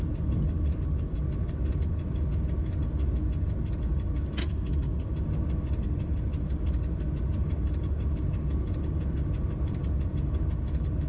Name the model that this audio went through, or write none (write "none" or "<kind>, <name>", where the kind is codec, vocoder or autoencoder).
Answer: none